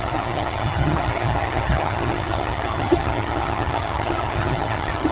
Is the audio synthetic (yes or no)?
yes